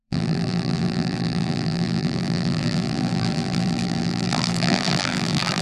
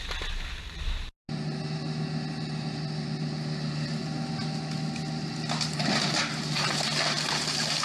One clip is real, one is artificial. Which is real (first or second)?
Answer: second